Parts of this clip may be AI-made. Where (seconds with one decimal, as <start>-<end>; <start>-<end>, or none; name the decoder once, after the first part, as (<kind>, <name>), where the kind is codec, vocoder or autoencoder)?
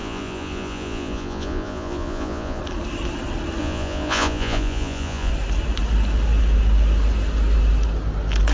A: 0.0-2.6 (vocoder, Vocos); 3.6-5.3